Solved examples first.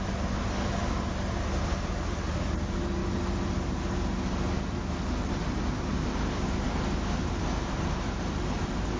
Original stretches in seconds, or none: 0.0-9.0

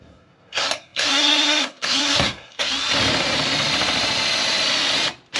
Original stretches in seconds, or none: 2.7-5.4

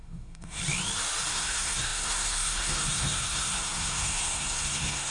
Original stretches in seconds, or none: 0.6-1.3

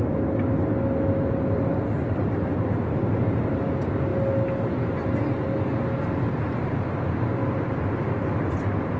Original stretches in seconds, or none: 0.0-9.0

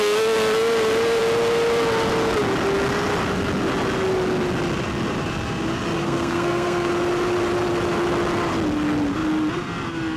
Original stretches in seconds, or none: 0.0-6.0; 6.9-10.2

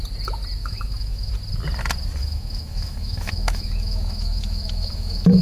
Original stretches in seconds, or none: 0.0-0.6; 1.3-2.2